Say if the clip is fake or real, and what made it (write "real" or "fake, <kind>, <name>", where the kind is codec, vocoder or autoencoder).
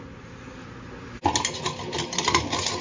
real